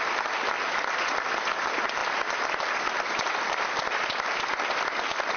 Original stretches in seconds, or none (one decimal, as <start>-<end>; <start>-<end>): 0.0-5.4